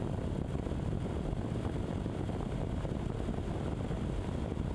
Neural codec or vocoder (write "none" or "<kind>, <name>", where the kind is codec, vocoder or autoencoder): none